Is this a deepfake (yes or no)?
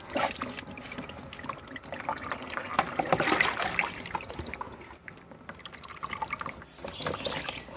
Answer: no